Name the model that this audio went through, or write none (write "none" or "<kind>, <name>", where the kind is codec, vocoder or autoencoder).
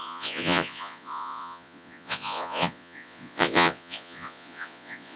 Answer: vocoder, Vocos